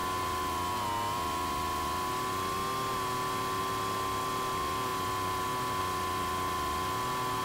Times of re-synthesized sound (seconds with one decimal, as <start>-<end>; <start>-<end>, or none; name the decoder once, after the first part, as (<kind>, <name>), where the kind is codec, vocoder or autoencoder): none